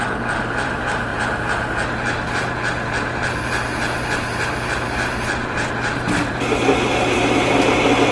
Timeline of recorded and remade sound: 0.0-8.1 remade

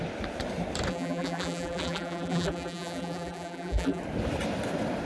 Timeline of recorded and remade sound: 0.0-0.9 recorded; 0.9-4.0 remade; 4.0-5.1 recorded

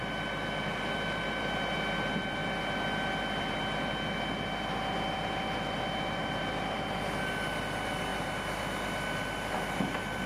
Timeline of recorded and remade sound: 0.0-10.3 recorded

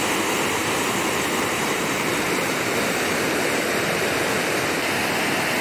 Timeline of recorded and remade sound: 0.0-0.6 recorded; 0.6-4.0 remade; 4.0-5.6 recorded

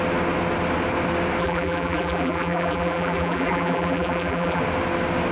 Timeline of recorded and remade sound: 0.0-1.4 recorded; 1.4-4.6 remade; 4.6-5.3 recorded

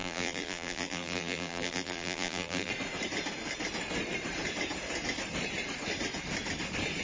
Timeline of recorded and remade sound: 0.0-2.7 remade; 2.7-7.0 recorded

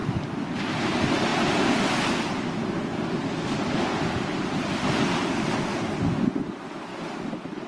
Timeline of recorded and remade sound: 0.0-0.5 remade; 0.5-1.3 recorded; 1.3-5.9 remade; 5.9-6.9 recorded; 6.9-7.7 remade

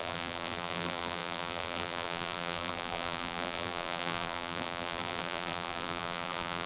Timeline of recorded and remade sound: 0.0-6.7 remade